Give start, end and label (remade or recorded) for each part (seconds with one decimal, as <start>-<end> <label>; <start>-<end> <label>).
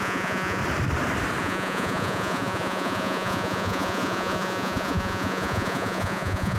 0.0-0.6 remade; 0.6-1.4 recorded; 1.4-6.6 remade